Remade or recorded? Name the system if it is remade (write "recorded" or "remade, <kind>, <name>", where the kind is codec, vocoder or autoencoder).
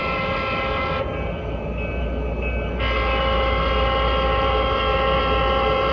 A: recorded